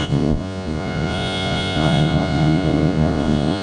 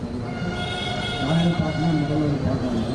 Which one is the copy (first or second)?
first